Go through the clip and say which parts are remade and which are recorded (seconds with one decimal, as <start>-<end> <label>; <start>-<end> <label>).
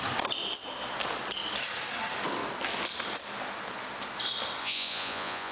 0.0-4.6 recorded; 4.6-5.5 remade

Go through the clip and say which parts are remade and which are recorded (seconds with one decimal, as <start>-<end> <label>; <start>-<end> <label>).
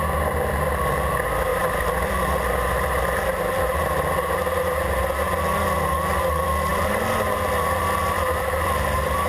0.0-9.3 recorded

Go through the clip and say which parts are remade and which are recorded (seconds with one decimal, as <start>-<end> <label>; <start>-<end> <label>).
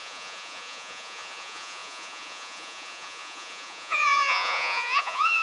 0.0-5.4 remade